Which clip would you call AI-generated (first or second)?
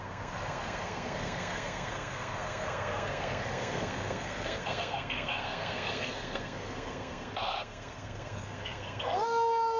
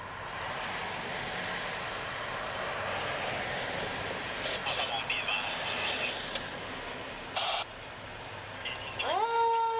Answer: first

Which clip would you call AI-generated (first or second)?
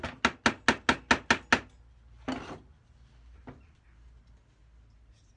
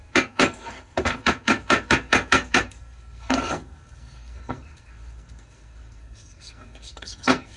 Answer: second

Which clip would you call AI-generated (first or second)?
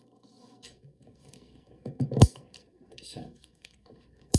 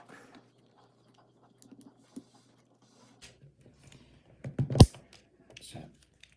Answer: first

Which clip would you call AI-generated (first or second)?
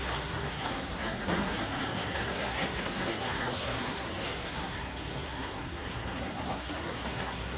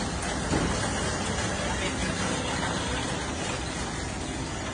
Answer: first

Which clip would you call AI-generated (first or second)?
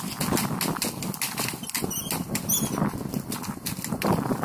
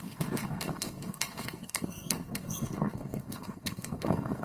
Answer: second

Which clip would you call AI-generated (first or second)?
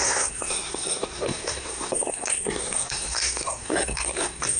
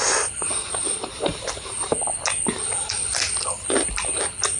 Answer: first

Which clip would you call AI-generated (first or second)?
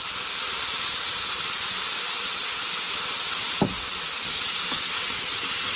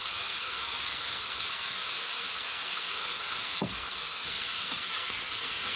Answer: second